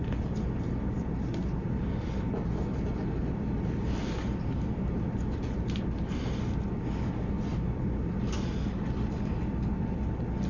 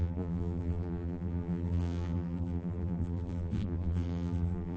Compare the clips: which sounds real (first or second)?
first